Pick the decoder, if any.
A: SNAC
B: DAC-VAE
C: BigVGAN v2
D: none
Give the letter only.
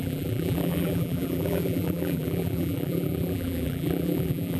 C